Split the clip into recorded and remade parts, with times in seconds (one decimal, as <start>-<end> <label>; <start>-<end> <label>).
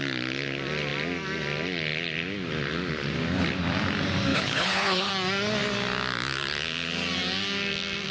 0.0-4.3 recorded; 4.3-5.1 remade; 5.1-8.1 recorded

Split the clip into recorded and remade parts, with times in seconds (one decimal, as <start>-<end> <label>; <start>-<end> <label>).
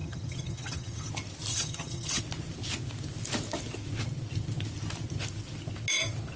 0.0-1.1 remade; 1.1-1.5 recorded; 1.5-2.2 remade; 2.2-6.4 recorded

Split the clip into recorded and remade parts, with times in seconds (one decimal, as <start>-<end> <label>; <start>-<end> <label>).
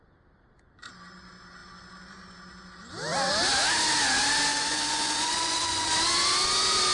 0.0-4.5 recorded; 4.5-5.9 remade; 5.9-6.9 recorded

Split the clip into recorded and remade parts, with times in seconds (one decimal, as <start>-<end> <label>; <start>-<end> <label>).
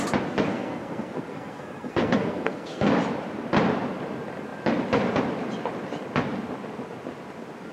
0.0-0.5 recorded; 0.5-2.9 remade; 2.9-7.7 recorded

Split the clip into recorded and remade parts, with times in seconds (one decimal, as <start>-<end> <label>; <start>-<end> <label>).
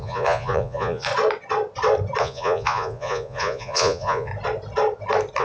0.0-1.1 remade; 1.1-2.2 recorded; 2.2-4.3 remade; 4.3-5.4 recorded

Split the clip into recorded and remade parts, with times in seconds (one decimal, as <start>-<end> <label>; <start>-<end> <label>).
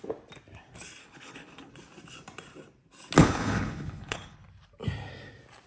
0.0-1.0 recorded; 1.0-1.7 remade; 1.7-3.2 recorded; 3.2-4.4 remade; 4.4-5.7 recorded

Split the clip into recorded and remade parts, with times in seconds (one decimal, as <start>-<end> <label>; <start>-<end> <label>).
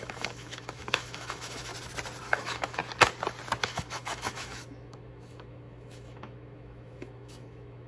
0.0-1.7 remade; 1.7-2.2 recorded; 2.2-2.8 remade; 2.8-3.6 recorded; 3.6-7.9 remade